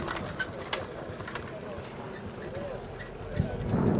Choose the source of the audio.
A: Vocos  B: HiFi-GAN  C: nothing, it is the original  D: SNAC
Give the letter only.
C